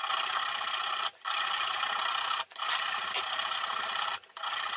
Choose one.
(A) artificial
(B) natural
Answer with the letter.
A